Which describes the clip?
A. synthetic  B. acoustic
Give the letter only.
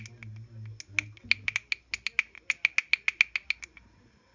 B